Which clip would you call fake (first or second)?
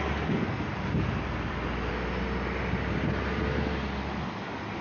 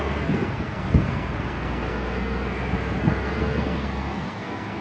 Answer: second